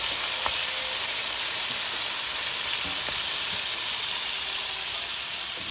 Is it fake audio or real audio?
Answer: real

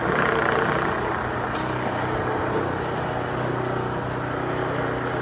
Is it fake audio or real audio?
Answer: real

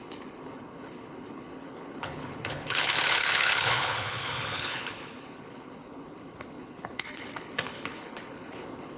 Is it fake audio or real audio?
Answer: fake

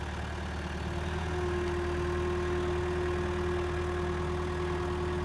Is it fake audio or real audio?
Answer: real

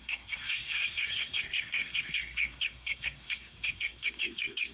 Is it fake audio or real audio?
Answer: fake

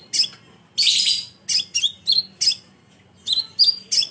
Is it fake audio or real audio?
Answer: real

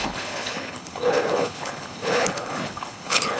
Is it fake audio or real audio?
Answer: fake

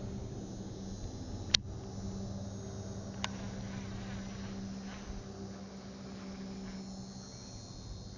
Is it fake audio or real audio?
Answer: real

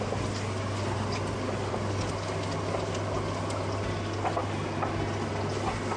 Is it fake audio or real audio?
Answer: real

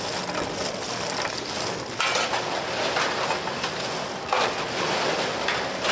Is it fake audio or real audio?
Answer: real